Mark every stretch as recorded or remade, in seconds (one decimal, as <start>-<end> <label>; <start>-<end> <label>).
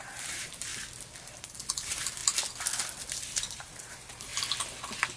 0.0-0.7 remade; 0.7-1.7 recorded; 1.7-2.2 remade; 2.2-3.1 recorded; 3.1-4.3 remade; 4.3-5.2 recorded